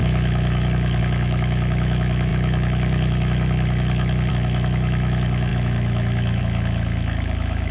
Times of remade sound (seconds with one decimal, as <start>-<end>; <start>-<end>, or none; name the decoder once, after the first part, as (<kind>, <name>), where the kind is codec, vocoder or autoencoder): 0.0-7.7 (autoencoder, DAC-VAE)